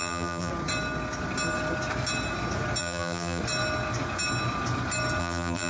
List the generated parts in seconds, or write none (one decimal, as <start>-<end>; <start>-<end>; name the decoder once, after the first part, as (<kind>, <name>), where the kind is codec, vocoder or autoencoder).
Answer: 0.0-0.5 (vocoder, BigVGAN v2); 2.8-3.4; 5.2-5.7